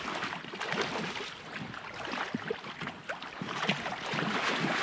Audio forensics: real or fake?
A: real